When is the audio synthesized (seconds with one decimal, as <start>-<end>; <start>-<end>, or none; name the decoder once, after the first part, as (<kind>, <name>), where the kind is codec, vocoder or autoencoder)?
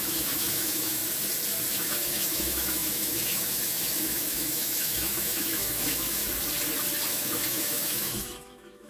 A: 0.0-1.0 (autoencoder, DAC-VAE); 1.7-6.2; 7.1-8.9